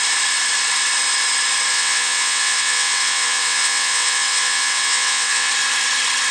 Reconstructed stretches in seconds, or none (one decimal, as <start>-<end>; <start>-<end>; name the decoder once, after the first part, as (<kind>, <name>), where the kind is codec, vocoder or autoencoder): 1.7-5.5 (vocoder, WaveNeXt)